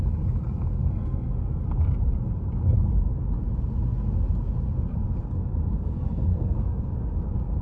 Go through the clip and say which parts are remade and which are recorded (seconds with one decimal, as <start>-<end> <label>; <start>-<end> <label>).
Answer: 0.0-0.8 recorded; 0.8-1.6 remade; 1.6-6.3 recorded; 6.3-6.9 remade; 6.9-7.6 recorded